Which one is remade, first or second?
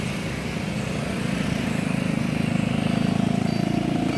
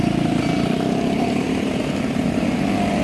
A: second